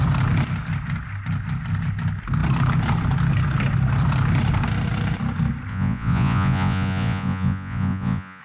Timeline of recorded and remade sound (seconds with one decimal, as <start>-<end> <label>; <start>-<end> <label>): 0.0-5.7 recorded; 5.7-8.4 remade